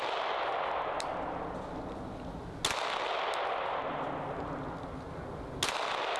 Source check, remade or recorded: recorded